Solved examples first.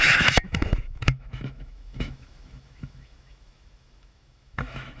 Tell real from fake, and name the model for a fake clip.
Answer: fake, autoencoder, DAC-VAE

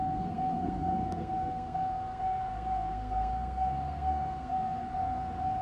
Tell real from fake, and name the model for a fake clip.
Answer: fake, codec, SNAC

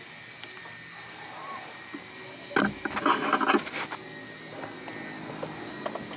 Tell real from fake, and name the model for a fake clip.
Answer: real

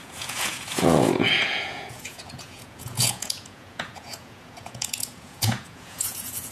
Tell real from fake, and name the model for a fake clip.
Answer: fake, vocoder, Vocos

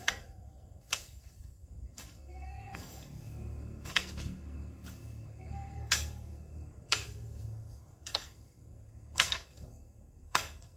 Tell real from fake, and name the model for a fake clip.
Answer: fake, codec, SNAC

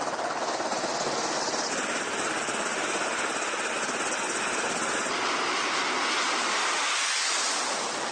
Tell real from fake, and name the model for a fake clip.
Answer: real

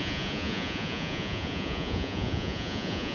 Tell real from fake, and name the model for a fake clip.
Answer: fake, vocoder, Vocos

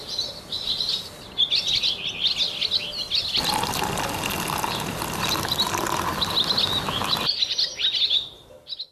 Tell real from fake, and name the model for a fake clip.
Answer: real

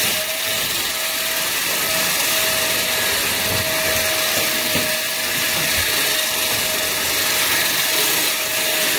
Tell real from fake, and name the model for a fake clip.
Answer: real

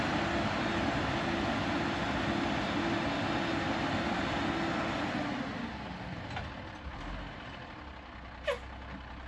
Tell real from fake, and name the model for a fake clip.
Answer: real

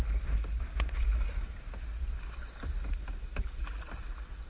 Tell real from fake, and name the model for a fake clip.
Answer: real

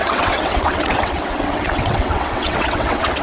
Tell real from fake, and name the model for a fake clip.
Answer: fake, vocoder, WaveNeXt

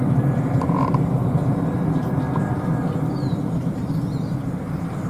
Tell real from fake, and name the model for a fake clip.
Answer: real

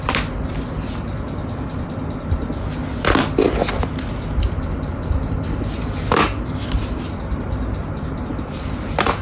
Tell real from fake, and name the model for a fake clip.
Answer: real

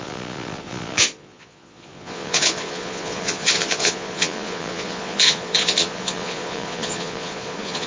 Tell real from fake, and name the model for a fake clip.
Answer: fake, vocoder, Vocos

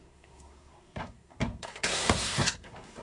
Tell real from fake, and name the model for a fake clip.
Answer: fake, codec, SNAC